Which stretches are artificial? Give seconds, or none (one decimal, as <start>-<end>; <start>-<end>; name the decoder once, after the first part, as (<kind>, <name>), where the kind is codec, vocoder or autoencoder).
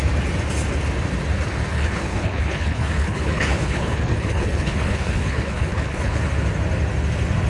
1.7-6.2 (codec, HILCodec)